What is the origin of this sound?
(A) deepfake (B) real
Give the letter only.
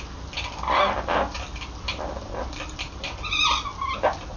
B